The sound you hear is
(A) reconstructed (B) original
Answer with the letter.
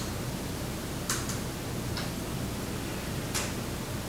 B